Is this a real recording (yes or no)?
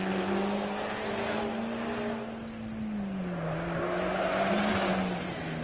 yes